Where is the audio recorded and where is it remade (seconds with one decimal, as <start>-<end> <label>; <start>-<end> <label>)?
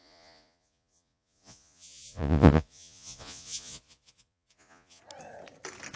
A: 0.0-5.0 remade; 5.0-6.0 recorded